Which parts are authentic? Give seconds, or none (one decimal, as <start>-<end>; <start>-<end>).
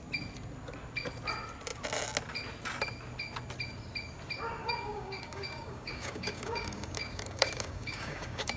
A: 0.0-4.6